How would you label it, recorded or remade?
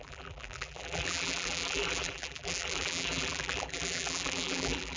remade